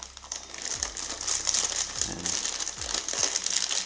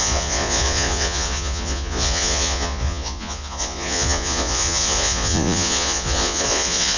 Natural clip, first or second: first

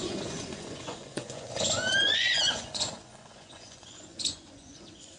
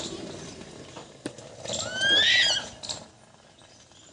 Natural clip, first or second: second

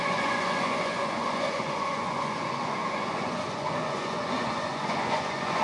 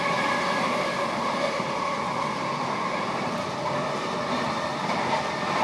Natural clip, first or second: second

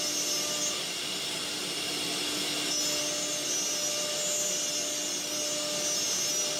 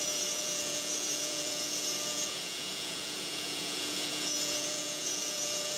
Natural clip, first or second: first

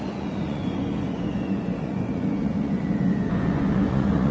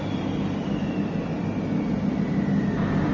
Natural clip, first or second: second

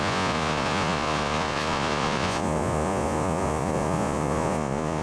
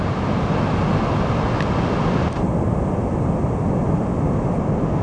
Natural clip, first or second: second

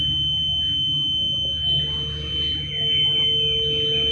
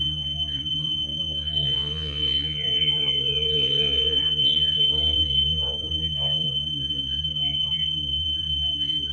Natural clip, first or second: first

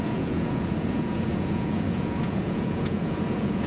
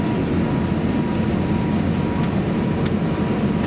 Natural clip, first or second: second